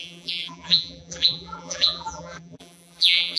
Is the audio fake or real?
fake